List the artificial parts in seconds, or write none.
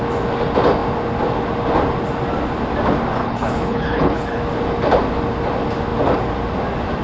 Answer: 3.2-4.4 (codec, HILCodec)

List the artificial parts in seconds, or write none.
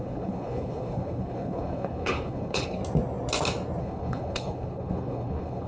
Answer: 0.0-2.8 (codec, HILCodec); 3.8-5.7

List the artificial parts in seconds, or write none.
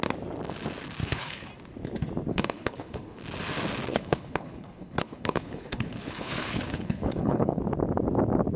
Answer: 1.0-1.5 (codec, HILCodec); 2.3-3.2; 3.9-7.6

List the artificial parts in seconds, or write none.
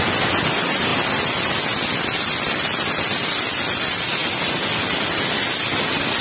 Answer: none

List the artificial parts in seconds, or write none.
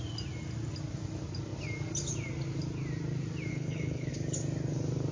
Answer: 3.5-4.1 (codec, HILCodec)